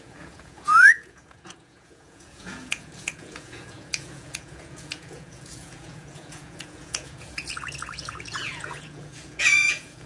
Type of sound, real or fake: fake